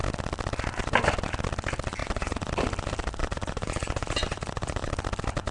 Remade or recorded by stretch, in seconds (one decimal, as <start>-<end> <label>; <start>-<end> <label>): 0.0-2.0 recorded; 2.0-2.5 remade; 2.5-3.2 recorded; 3.2-4.9 remade; 4.9-5.5 recorded